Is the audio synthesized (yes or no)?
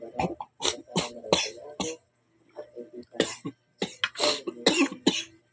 no